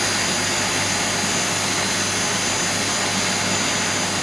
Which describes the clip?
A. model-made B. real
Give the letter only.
B